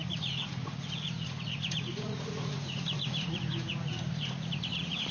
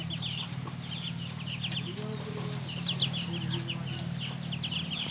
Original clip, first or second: second